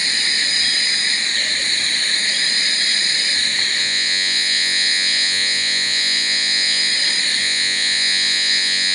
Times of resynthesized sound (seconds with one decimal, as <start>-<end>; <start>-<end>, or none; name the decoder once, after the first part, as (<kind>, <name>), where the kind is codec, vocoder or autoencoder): 3.8-6.9 (vocoder, Vocos); 7.4-8.9